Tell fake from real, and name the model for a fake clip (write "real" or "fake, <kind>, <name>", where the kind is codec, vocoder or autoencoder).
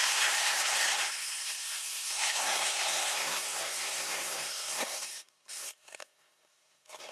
fake, codec, SNAC